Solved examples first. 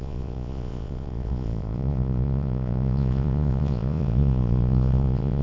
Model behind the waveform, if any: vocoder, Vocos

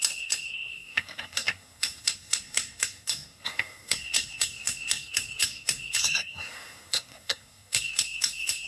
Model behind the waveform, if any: codec, SNAC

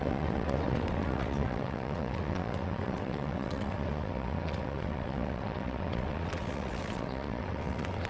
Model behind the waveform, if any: vocoder, WaveNeXt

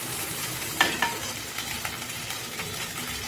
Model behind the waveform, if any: vocoder, BigVGAN v2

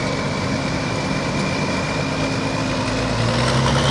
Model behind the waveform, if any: none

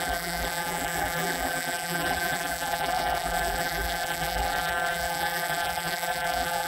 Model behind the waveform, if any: vocoder, BigVGAN v2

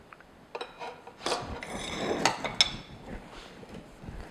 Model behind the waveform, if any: none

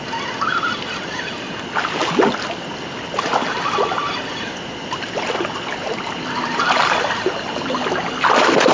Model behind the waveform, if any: none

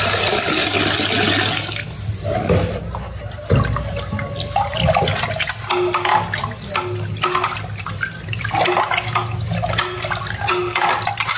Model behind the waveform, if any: none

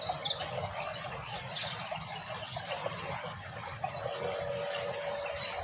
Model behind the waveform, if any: none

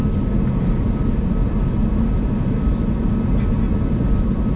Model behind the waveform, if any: none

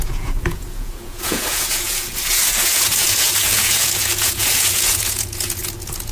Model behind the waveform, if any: vocoder, Vocos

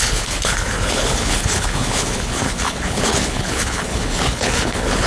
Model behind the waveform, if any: codec, HILCodec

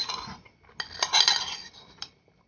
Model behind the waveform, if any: none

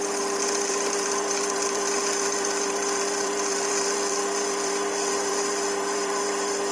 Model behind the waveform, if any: vocoder, BigVGAN v2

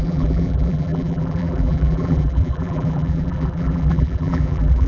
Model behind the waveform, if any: vocoder, BigVGAN v2